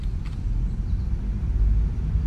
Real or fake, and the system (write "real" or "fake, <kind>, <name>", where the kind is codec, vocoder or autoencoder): real